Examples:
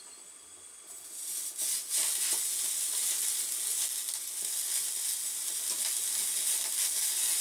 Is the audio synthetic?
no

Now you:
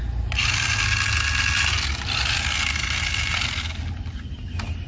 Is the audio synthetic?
no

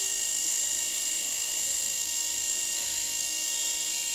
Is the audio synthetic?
yes